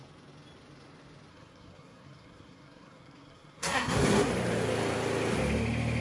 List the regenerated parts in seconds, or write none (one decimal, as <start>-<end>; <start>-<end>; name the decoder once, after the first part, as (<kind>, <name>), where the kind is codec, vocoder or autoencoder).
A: 1.3-4.3 (codec, SNAC)